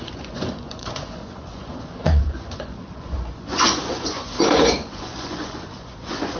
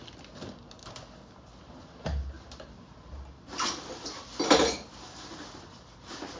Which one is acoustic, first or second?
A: second